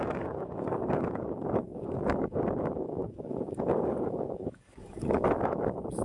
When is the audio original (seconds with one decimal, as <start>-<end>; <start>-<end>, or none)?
none